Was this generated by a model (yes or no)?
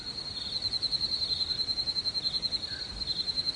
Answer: no